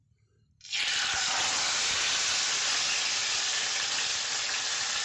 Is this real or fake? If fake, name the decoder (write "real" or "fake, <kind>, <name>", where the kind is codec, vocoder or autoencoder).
real